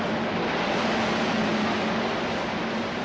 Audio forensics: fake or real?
real